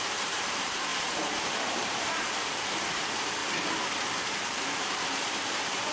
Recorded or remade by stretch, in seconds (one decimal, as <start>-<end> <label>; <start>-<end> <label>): 0.0-3.4 remade; 3.4-4.2 recorded; 4.2-5.9 remade